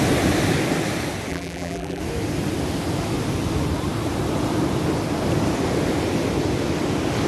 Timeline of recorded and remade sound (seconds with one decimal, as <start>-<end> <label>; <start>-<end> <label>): 0.0-1.3 recorded; 1.3-2.0 remade; 2.0-7.3 recorded